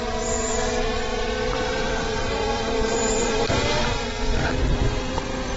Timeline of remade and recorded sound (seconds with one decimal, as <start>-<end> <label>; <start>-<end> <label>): 0.0-1.1 recorded; 1.1-4.5 remade; 4.5-5.6 recorded